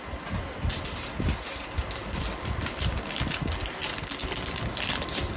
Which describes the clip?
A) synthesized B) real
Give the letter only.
B